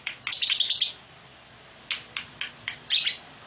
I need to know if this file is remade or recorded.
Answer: recorded